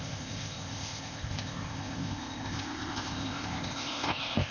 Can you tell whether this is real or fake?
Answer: fake